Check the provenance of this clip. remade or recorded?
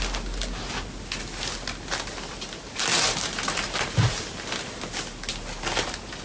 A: recorded